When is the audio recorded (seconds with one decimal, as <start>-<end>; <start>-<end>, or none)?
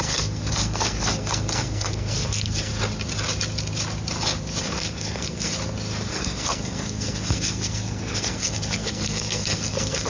2.7-4.6; 5.5-6.1